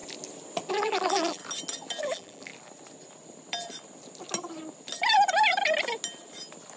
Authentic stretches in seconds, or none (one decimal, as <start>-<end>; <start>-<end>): 0.0-0.7; 1.4-2.0; 2.5-6.8